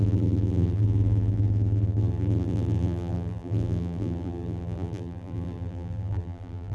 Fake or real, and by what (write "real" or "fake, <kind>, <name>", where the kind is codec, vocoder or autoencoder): fake, vocoder, BigVGAN v2